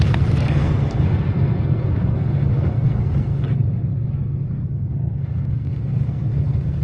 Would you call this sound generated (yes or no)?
yes